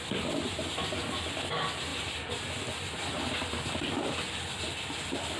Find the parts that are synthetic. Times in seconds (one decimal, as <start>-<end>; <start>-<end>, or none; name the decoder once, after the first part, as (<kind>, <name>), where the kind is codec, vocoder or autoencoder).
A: none